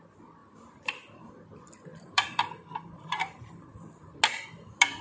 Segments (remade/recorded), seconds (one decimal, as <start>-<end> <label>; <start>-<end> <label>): 0.0-0.4 recorded; 0.4-1.3 remade; 1.3-1.9 recorded; 1.9-4.2 remade; 4.2-5.0 recorded

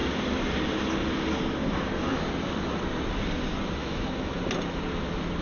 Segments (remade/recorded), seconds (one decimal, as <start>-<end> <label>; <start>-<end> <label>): 0.0-3.8 recorded; 3.8-4.4 remade; 4.4-5.4 recorded